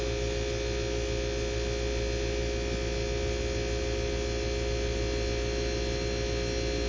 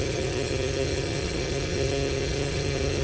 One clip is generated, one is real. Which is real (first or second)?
first